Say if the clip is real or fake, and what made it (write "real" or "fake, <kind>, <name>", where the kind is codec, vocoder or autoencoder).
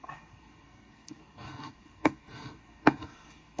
fake, codec, SNAC